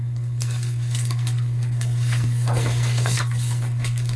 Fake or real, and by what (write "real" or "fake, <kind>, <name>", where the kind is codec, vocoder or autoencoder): fake, codec, SNAC